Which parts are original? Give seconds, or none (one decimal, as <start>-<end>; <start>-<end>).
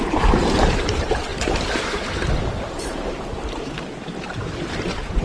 none